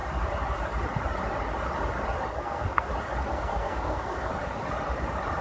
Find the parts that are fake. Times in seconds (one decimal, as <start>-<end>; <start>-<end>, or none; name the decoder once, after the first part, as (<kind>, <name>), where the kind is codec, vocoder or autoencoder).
2.3-2.9 (codec, SNAC); 3.3-4.3